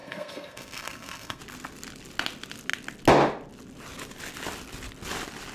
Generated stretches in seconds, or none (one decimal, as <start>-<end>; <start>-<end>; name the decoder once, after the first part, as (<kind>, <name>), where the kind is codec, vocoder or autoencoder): 0.0-1.4 (codec, SNAC)

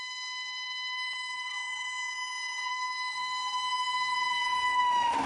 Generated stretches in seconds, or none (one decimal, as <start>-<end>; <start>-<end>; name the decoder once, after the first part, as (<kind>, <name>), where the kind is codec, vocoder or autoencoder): 0.0-1.5 (autoencoder, DAC-VAE); 2.7-5.3